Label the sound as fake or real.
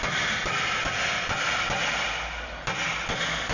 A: real